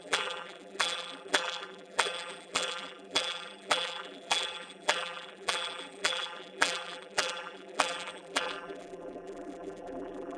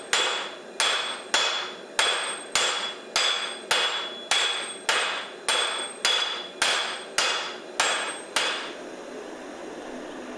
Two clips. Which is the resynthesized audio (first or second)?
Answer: first